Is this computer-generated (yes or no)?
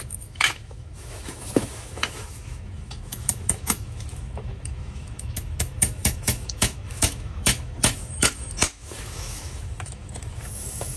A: yes